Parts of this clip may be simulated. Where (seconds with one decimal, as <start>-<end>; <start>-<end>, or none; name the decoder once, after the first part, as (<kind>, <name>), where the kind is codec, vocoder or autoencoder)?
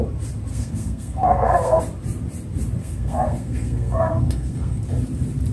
0.5-1.8 (codec, SNAC); 2.8-4.8